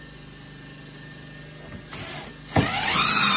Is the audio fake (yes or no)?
no